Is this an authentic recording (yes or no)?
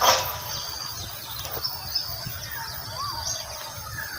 yes